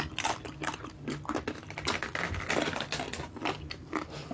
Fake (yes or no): no